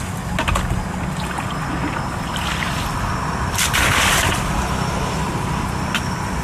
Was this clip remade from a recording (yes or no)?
no